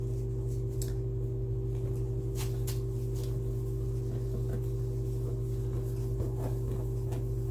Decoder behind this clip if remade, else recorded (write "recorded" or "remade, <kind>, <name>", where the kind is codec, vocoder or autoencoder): recorded